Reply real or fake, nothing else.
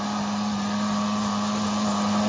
real